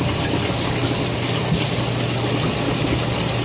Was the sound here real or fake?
real